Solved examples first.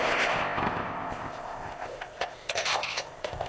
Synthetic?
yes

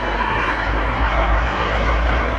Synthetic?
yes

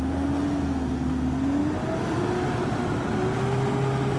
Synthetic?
no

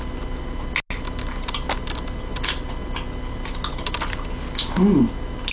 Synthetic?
no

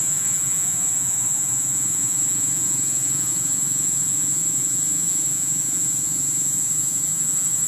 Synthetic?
yes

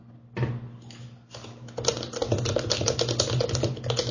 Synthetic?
no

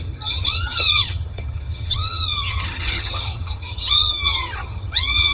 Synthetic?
yes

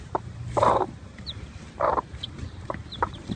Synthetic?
yes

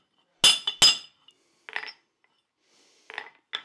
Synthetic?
no